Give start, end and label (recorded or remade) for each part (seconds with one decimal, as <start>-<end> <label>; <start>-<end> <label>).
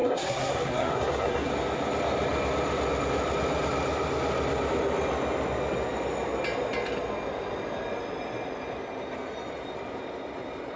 0.0-1.5 remade; 1.5-10.8 recorded